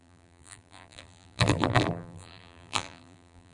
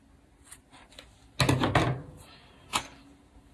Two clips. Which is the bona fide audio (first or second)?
second